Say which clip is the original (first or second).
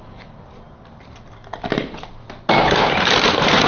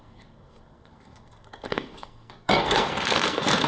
first